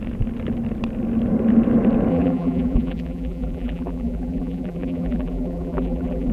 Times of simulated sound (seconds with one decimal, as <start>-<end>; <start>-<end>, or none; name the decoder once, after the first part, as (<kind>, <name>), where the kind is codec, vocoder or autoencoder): 2.1-6.3 (vocoder, BigVGAN v2)